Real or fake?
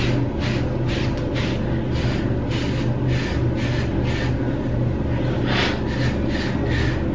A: real